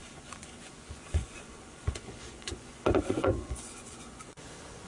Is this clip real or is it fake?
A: fake